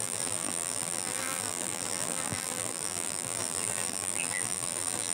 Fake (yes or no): yes